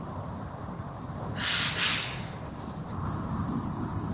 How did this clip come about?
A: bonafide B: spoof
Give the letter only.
A